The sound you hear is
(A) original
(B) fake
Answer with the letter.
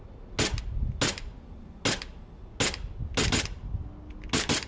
A